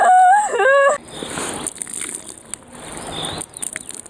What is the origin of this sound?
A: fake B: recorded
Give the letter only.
B